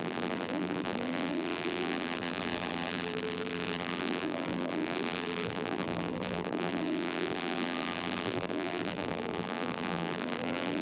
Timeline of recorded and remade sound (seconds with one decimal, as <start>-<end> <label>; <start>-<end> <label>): 0.0-10.8 remade